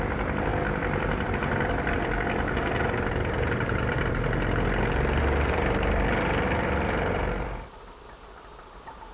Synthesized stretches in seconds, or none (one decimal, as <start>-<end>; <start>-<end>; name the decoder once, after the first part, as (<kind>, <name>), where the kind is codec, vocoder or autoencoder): 0.0-9.1 (vocoder, BigVGAN v2)

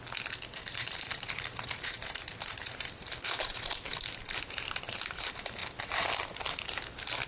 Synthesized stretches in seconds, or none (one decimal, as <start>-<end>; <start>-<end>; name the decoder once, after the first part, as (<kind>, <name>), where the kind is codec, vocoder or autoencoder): 0.6-4.9 (vocoder, BigVGAN v2)